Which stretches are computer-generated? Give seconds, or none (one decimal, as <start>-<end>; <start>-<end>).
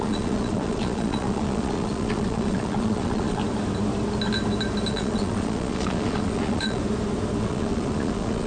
0.0-3.4; 4.9-6.8; 7.4-8.5